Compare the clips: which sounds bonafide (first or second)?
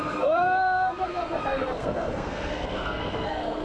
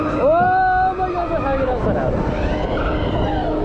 second